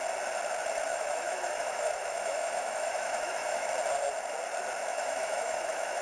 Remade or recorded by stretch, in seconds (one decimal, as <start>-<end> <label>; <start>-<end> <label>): 0.0-0.9 recorded; 0.9-3.7 remade; 3.7-4.9 recorded; 4.9-6.0 remade